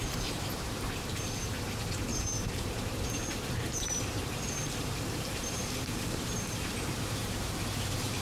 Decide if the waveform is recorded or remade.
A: remade